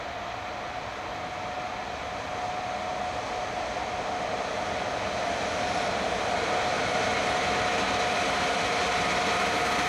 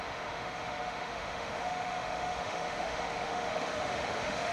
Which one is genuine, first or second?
first